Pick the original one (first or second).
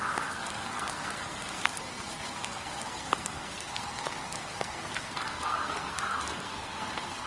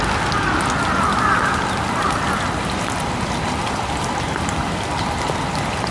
second